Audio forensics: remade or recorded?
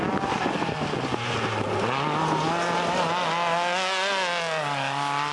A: recorded